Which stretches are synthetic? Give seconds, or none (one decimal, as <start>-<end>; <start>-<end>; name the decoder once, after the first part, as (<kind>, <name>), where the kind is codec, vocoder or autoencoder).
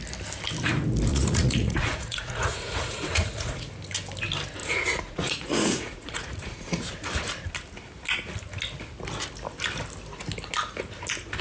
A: 1.1-3.7 (vocoder, Vocos); 4.6-7.1